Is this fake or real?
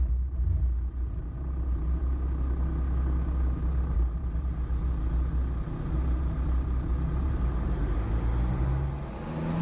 real